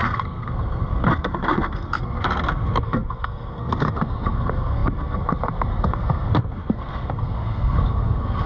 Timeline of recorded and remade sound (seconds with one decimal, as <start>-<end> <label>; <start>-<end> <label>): 0.0-8.5 remade